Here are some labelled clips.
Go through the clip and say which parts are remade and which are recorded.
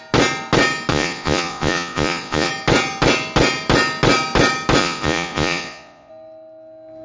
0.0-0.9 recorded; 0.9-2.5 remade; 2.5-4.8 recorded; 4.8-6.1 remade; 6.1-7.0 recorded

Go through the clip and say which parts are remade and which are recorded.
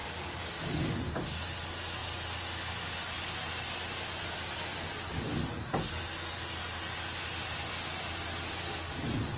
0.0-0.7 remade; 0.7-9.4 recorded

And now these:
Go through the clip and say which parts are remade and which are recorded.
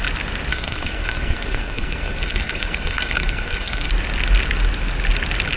0.0-0.5 recorded; 0.5-3.9 remade; 3.9-5.6 recorded